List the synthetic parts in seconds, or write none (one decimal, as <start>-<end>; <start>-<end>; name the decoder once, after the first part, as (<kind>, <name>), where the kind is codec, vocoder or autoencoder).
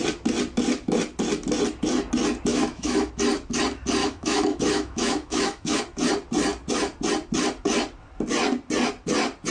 2.5-3.1 (autoencoder, DAC-VAE); 4.0-5.8